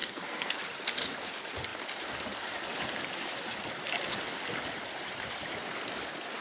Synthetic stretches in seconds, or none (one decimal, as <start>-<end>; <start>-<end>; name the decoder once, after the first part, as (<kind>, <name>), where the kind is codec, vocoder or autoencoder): 0.0-0.6 (codec, SNAC)